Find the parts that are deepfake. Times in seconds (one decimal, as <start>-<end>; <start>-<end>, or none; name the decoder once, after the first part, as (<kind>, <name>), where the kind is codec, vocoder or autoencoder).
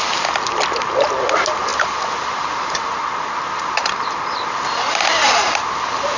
none